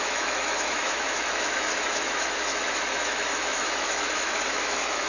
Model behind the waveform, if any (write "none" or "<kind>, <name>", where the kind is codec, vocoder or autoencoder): autoencoder, DAC-VAE